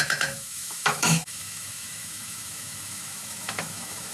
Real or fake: fake